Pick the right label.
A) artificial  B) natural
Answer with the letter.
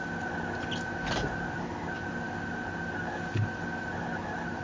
B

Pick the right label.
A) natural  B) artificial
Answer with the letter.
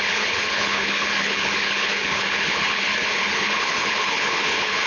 B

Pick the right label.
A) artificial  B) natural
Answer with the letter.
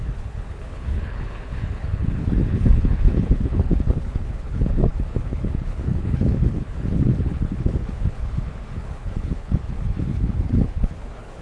A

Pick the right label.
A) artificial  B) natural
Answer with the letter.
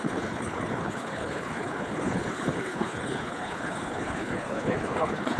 A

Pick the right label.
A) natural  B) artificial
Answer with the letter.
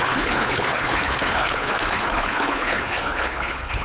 B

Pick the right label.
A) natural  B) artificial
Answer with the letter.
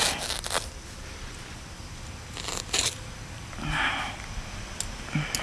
A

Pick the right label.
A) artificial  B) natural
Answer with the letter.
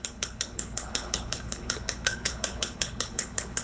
A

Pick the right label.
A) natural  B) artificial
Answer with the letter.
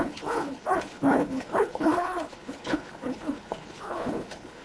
B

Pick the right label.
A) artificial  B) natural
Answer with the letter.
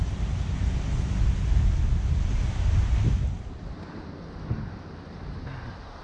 B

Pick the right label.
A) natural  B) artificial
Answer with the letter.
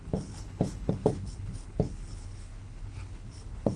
B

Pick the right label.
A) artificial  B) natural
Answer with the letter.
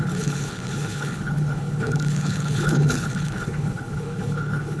A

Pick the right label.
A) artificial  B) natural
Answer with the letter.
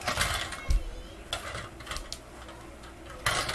B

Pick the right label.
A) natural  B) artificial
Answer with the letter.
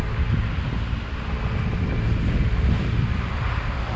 A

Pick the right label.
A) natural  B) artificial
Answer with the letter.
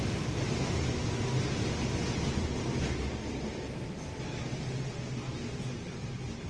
A